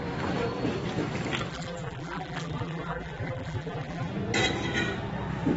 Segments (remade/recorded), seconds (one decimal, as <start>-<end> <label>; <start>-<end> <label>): 0.0-1.5 recorded; 1.5-4.1 remade; 4.1-5.6 recorded